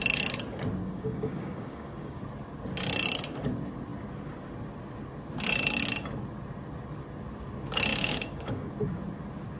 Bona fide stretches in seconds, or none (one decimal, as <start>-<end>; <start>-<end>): 0.0-0.8; 2.2-7.9; 8.7-9.6